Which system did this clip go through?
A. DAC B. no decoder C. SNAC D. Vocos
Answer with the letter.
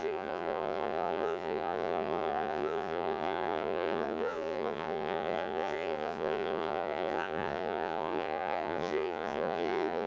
D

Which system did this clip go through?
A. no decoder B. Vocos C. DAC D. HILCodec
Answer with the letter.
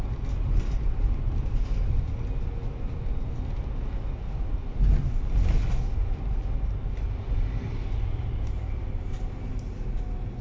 A